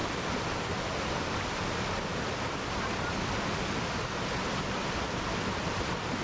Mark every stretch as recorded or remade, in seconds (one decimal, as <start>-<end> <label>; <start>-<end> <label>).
0.0-6.2 recorded